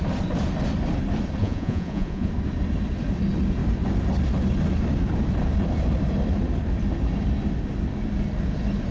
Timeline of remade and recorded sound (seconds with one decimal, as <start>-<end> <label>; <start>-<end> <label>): 0.0-1.4 recorded; 1.4-2.3 remade; 2.3-8.9 recorded